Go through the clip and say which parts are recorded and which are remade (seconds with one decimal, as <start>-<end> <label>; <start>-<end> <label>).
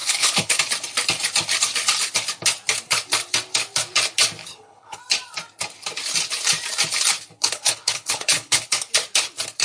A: 0.0-0.6 remade; 0.6-4.4 recorded; 4.4-5.0 remade; 5.0-7.4 recorded; 7.4-8.7 remade; 8.7-9.6 recorded